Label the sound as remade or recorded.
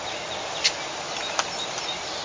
recorded